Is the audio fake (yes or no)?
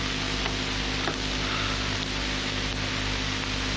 no